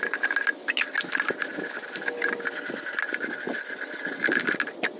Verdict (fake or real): real